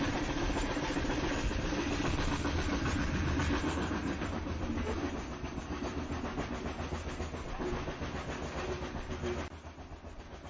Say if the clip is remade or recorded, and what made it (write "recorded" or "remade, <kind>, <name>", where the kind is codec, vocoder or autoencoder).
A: recorded